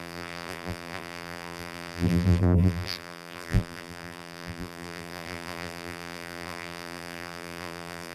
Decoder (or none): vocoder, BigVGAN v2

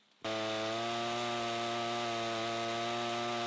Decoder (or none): none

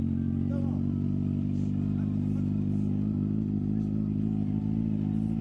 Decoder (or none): none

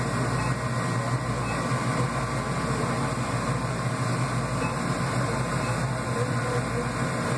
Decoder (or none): none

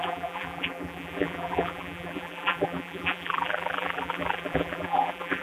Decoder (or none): vocoder, BigVGAN v2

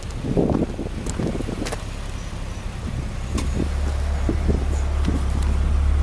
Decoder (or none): none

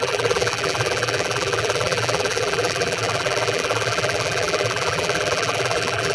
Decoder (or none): vocoder, BigVGAN v2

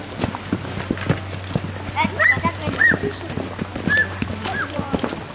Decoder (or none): none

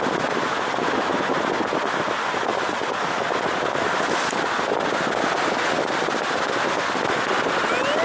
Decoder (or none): none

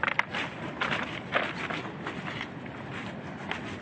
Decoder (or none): none